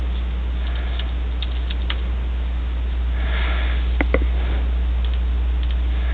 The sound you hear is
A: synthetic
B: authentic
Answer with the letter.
B